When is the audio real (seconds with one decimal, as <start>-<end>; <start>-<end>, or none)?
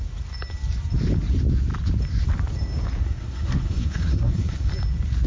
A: 0.0-3.0; 4.7-5.3